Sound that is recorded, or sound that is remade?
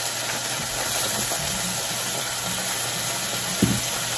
recorded